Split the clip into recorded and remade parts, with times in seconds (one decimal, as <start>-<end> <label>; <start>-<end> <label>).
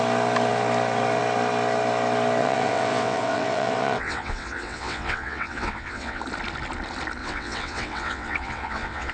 0.0-2.4 recorded; 2.4-6.2 remade; 6.2-7.2 recorded; 7.2-9.1 remade